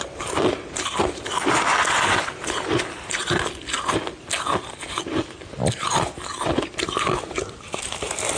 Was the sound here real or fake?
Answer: real